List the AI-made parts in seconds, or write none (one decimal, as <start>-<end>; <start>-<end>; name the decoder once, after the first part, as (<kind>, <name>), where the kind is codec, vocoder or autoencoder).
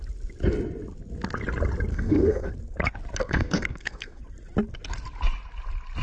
1.9-2.5 (codec, SNAC); 3.2-4.2